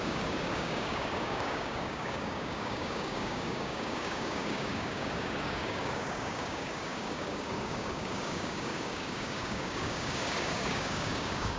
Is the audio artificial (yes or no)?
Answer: yes